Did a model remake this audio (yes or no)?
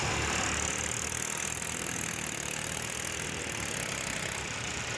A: yes